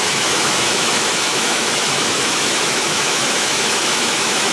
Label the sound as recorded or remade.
remade